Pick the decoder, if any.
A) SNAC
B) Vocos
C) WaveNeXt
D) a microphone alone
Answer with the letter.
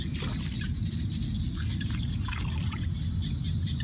D